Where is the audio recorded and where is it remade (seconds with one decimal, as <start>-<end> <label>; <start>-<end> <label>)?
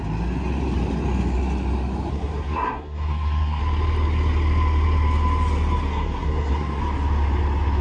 0.0-2.1 recorded; 2.1-3.6 remade; 3.6-5.9 recorded; 5.9-6.8 remade; 6.8-7.8 recorded